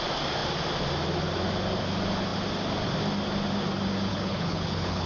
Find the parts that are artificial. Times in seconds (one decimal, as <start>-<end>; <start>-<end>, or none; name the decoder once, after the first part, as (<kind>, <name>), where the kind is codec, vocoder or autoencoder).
4.1-5.1 (codec, HILCodec)